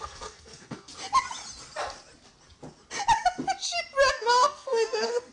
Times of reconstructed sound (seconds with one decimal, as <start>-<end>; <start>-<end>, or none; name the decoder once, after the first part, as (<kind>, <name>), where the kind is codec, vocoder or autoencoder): 0.0-0.9 (codec, SNAC); 4.1-5.3